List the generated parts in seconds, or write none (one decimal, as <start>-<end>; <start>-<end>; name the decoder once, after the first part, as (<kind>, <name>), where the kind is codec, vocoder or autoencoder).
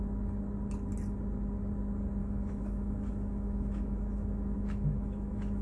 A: 2.2-5.6 (autoencoder, DAC-VAE)